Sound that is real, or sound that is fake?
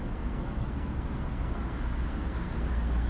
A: fake